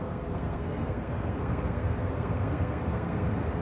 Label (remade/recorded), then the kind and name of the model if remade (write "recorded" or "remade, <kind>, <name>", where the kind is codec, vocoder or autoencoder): remade, codec, SNAC